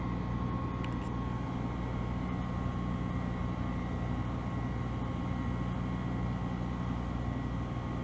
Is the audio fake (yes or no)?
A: no